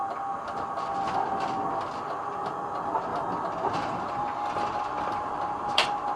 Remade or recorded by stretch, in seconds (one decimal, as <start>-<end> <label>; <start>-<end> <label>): 0.0-2.3 recorded; 2.3-3.1 remade; 3.1-4.0 recorded; 4.0-6.2 remade